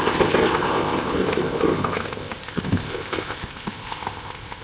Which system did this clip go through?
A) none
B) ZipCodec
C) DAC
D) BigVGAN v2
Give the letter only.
B